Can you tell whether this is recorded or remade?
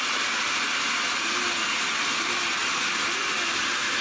recorded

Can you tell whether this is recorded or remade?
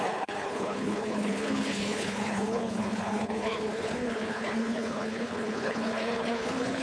remade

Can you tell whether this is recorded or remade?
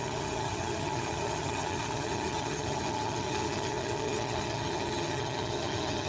remade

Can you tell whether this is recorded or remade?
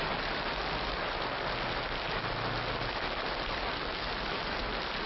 recorded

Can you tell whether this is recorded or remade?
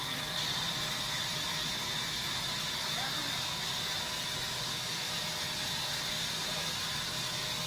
recorded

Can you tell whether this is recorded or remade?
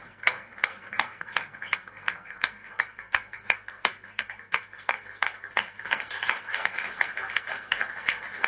remade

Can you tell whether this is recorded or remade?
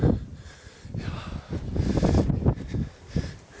recorded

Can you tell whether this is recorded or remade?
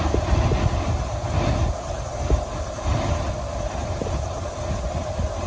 recorded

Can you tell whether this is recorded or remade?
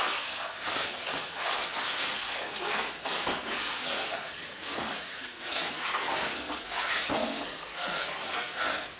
remade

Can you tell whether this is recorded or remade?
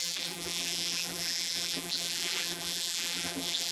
remade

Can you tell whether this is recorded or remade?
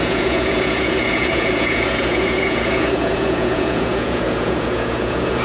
remade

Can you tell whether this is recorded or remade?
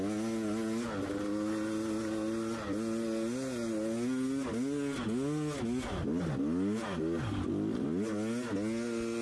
recorded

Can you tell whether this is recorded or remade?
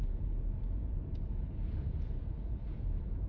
remade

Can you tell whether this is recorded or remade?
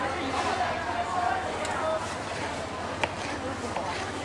remade